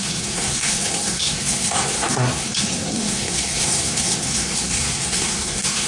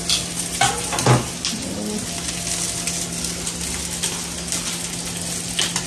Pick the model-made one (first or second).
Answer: first